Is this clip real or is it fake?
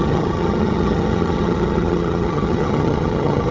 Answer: fake